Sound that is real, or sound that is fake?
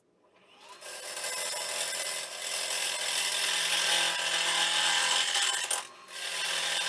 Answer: real